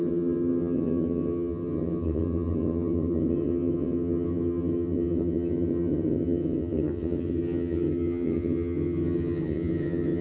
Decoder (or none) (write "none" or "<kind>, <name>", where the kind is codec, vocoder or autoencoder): vocoder, HiFi-GAN